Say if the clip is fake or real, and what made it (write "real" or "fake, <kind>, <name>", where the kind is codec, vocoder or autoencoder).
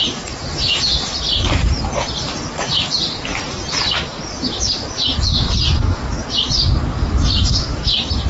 real